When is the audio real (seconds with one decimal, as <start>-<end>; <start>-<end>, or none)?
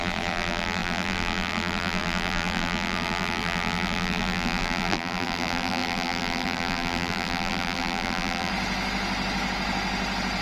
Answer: 8.5-10.4